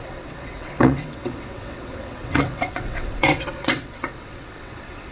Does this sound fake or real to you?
fake